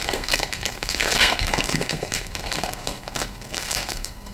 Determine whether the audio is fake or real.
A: fake